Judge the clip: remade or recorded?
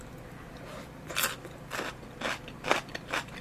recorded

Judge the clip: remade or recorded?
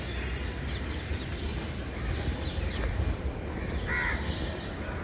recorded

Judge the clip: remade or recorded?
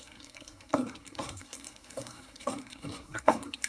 remade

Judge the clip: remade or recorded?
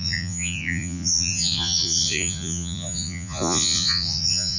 remade